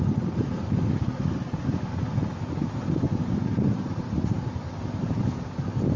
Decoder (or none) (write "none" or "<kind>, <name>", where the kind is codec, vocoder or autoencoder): none